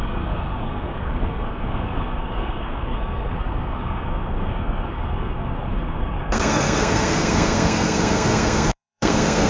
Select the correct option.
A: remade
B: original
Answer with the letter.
A